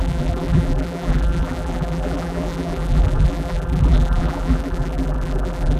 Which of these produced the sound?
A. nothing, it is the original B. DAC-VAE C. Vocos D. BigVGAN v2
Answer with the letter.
D